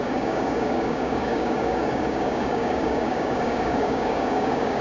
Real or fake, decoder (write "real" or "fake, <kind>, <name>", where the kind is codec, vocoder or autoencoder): fake, codec, DAC